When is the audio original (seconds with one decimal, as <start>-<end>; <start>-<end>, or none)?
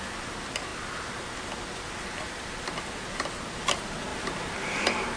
0.0-5.2